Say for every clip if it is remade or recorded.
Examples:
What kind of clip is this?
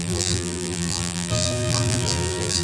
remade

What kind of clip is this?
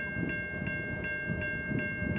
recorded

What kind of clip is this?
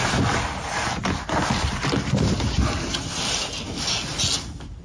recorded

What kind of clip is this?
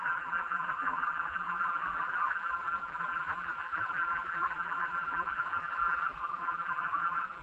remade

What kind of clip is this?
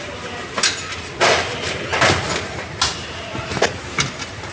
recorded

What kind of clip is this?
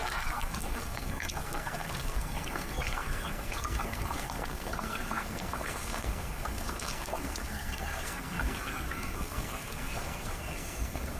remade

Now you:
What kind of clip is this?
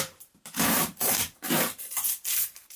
remade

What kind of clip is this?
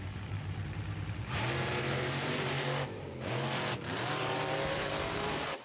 remade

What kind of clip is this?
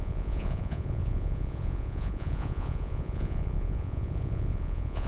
remade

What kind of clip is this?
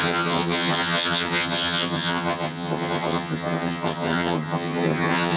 remade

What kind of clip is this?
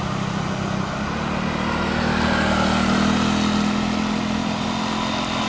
recorded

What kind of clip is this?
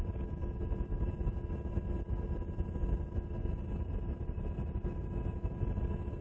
recorded